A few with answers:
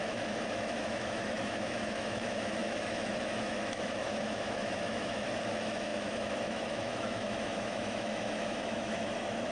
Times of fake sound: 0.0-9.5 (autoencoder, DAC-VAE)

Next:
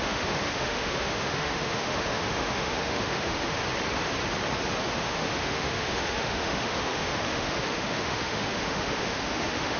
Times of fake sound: 0.0-3.6 (autoencoder, DAC-VAE); 4.9-9.8

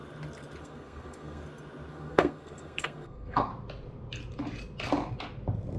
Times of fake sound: 0.6-1.4 (codec, SNAC); 1.9-3.5

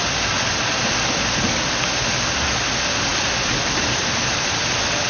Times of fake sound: none

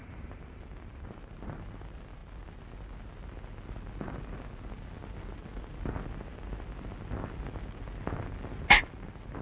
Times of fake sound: none

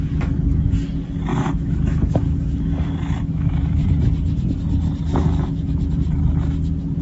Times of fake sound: 1.3-3.9 (autoencoder, DAC-VAE); 5.1-5.8

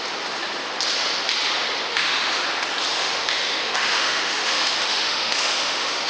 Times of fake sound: 1.9-2.4 (autoencoder, DAC-VAE); 3.0-6.1